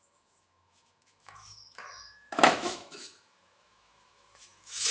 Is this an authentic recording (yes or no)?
no